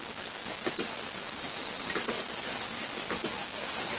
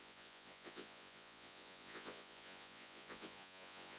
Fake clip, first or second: second